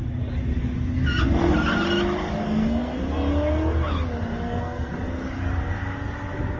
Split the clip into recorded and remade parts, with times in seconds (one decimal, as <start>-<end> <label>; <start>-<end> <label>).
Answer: 0.0-2.4 recorded; 2.4-3.0 remade; 3.0-4.3 recorded; 4.3-4.9 remade; 4.9-6.6 recorded